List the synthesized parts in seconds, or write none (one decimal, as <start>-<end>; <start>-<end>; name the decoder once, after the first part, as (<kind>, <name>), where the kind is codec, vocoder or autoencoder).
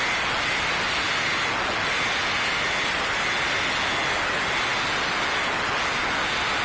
none